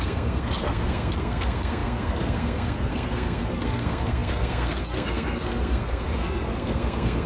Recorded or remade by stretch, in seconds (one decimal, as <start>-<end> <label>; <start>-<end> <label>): 0.0-7.3 remade